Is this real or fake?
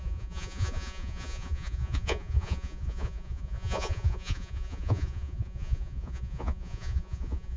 fake